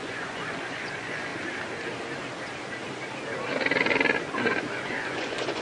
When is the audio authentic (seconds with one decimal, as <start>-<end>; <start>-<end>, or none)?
1.3-4.4